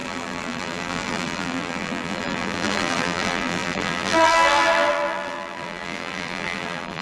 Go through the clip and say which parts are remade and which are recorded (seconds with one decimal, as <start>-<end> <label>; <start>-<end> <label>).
0.0-7.0 remade